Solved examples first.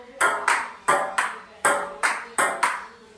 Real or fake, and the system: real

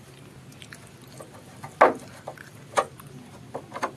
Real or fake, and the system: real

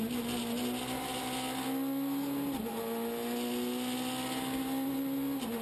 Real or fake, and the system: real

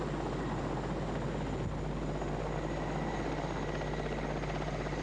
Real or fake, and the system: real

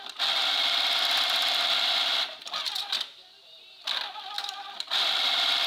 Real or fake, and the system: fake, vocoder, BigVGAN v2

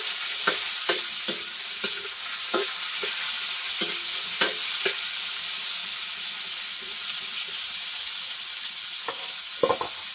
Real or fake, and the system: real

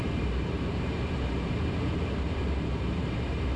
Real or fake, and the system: fake, vocoder, BigVGAN v2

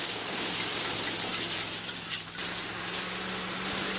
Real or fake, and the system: real